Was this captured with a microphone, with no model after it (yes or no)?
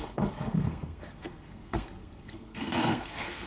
no